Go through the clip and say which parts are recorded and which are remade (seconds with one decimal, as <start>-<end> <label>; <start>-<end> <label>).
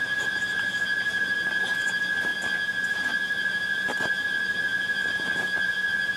0.0-2.3 remade; 2.3-2.9 recorded; 2.9-6.2 remade